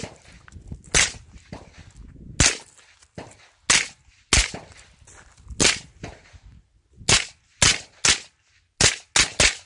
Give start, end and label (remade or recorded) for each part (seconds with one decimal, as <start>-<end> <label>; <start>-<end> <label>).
0.0-9.7 recorded